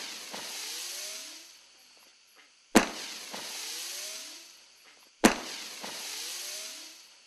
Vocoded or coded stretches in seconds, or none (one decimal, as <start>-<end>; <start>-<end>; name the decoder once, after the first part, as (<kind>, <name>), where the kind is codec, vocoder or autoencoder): 0.0-7.3 (vocoder, BigVGAN v2)